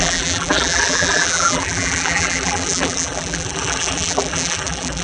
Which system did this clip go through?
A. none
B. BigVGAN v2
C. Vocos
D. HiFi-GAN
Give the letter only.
B